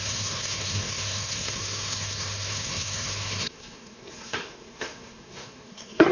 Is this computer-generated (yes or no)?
yes